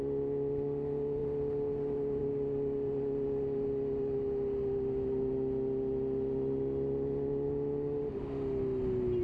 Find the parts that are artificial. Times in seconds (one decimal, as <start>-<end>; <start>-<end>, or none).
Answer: none